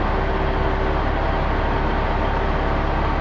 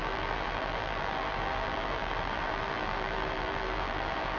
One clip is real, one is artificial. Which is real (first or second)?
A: first